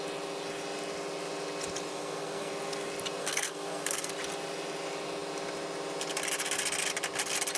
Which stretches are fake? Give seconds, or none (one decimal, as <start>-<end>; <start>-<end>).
1.9-2.5; 3.2-4.1